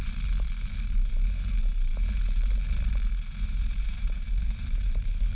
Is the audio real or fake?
fake